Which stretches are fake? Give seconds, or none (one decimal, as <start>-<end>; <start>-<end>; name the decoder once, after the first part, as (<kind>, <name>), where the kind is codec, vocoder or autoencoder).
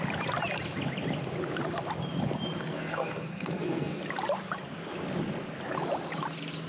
2.6-4.0 (codec, SNAC)